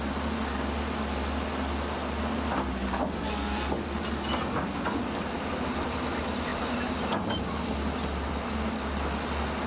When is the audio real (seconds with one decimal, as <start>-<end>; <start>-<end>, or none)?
0.0-9.7